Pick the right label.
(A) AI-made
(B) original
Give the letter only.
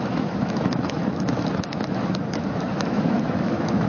A